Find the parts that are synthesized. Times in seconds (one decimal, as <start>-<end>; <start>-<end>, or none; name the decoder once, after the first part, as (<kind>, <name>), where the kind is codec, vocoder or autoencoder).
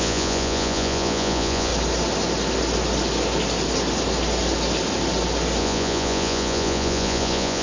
0.0-1.7 (vocoder, Vocos); 5.6-7.6